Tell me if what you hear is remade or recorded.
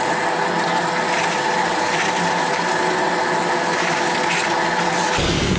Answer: recorded